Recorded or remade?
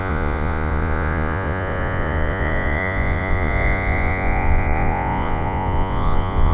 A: remade